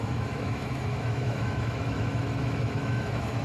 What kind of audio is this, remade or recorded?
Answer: remade